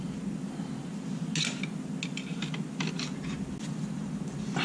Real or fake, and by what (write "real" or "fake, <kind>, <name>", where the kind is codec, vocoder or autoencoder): real